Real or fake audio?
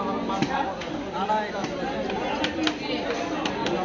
real